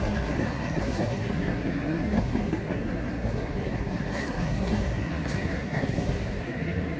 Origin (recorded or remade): remade